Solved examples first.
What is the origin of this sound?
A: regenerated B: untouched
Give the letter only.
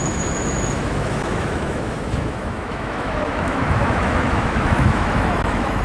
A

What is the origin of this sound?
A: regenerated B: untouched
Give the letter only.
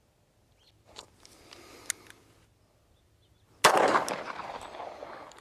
B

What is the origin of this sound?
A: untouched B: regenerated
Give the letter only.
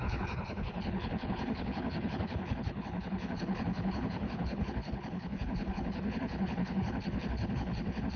B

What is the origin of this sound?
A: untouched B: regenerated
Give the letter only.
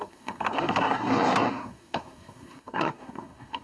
B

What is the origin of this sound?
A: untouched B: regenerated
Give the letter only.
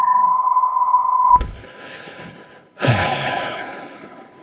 B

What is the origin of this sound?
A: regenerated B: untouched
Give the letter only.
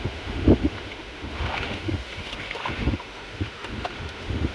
A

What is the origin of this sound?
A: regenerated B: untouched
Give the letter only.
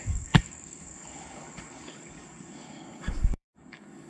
A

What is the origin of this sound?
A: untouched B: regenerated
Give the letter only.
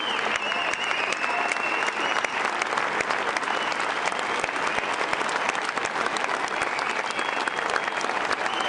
A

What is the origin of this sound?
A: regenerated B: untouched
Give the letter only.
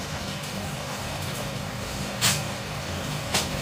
A